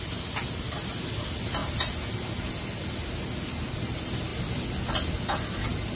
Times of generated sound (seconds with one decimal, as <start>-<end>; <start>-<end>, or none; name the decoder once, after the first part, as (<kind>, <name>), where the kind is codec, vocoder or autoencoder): none